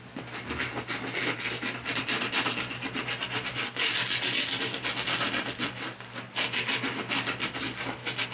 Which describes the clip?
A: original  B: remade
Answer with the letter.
A